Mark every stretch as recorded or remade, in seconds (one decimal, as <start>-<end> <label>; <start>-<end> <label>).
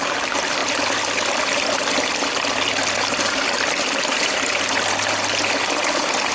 0.0-6.3 recorded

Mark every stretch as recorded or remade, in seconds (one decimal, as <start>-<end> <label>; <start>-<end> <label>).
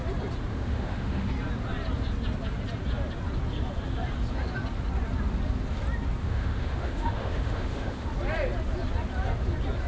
0.0-0.5 recorded; 0.5-1.3 remade; 1.3-6.2 recorded; 6.2-8.1 remade; 8.1-9.9 recorded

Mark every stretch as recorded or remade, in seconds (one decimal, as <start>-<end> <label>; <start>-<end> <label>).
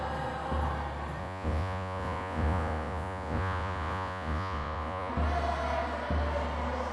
0.0-1.2 recorded; 1.2-5.1 remade; 5.1-6.9 recorded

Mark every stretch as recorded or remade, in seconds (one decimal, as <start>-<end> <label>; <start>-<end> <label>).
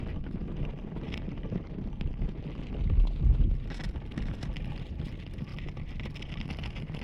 0.0-7.0 recorded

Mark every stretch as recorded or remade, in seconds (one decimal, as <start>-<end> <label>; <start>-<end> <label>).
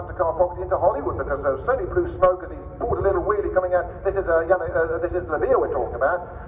0.0-6.5 recorded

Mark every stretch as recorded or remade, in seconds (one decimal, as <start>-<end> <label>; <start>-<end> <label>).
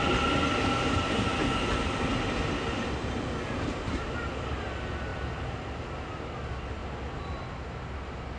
0.0-5.1 recorded; 5.1-6.2 remade; 6.2-8.4 recorded